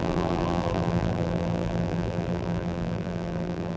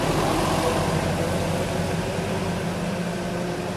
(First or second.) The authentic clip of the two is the second